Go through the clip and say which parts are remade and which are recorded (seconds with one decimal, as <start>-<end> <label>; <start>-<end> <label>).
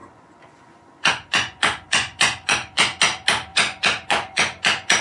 0.0-3.0 remade; 3.0-3.5 recorded; 3.5-5.0 remade